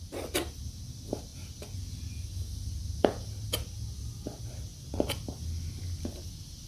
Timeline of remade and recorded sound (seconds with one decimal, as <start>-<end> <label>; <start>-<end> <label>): 0.0-6.7 recorded

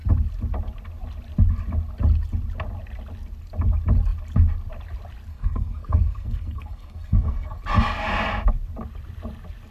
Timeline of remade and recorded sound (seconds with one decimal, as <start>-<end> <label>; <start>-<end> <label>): 0.0-5.3 recorded; 5.3-7.6 remade; 7.6-9.7 recorded

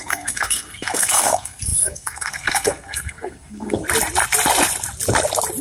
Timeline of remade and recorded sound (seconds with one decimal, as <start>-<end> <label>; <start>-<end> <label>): 0.0-3.8 remade; 3.8-5.6 recorded

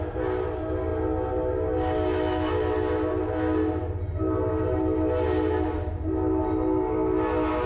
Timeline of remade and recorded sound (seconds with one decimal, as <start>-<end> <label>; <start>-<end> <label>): 0.0-7.7 recorded

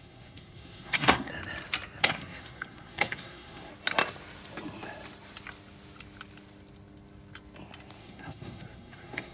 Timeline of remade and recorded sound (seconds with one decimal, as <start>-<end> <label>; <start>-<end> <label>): 0.0-1.3 remade; 1.3-2.0 recorded; 2.0-3.7 remade; 3.7-8.0 recorded; 8.0-9.3 remade

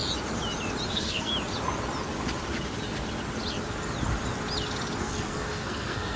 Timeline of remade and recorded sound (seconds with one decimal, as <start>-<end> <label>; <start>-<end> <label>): 0.0-0.9 recorded; 0.9-1.3 remade; 1.3-5.0 recorded; 5.0-6.2 remade